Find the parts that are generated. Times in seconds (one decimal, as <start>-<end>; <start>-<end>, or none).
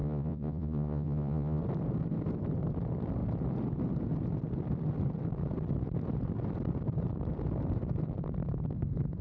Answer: 0.0-1.6